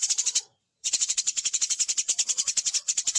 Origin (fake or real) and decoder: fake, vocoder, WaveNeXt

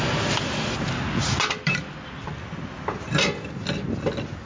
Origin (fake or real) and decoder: real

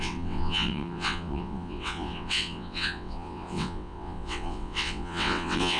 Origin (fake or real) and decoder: fake, vocoder, WaveNeXt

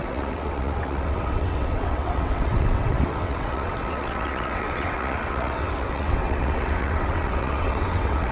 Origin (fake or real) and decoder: fake, vocoder, WaveNeXt